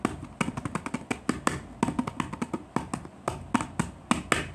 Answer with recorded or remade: recorded